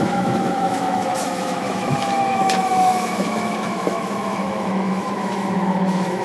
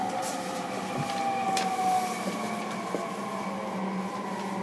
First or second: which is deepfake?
first